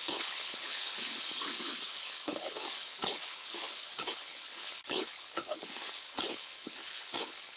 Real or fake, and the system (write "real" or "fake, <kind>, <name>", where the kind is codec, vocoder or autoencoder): fake, codec, HILCodec